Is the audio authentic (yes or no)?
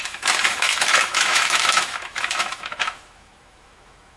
no